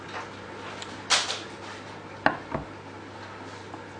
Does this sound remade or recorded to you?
recorded